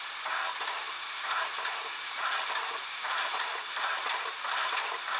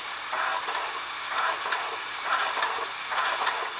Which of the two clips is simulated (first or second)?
first